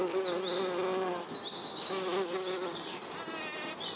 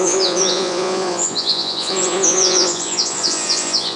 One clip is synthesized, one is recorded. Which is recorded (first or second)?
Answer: first